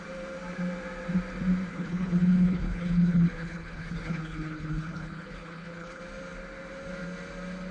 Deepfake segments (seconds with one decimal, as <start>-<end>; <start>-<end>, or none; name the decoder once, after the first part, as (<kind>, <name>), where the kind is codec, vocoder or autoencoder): 1.7-6.0 (codec, HILCodec)